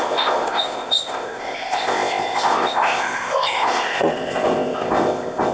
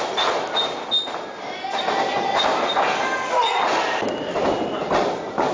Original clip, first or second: second